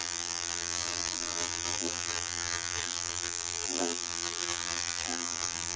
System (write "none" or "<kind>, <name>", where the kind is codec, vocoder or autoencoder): vocoder, BigVGAN v2